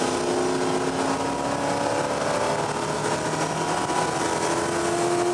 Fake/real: real